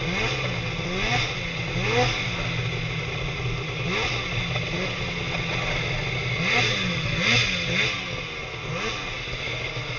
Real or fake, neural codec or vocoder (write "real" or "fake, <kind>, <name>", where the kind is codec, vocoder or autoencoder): real